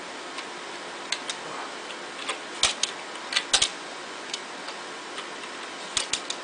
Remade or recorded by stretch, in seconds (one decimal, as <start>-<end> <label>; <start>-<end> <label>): 0.0-3.7 recorded; 3.7-4.4 remade; 4.4-6.4 recorded